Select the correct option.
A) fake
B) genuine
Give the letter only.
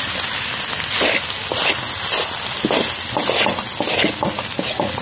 B